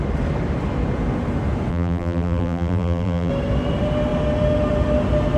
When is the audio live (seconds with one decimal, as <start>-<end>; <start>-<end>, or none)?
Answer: 0.0-1.7; 3.3-5.4